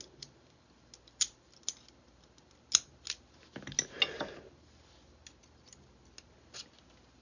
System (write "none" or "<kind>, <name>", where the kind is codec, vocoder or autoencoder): none